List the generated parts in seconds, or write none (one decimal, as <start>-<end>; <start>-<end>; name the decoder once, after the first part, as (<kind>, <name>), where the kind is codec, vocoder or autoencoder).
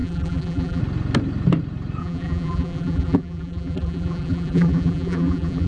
0.0-0.8 (vocoder, BigVGAN v2); 2.0-5.7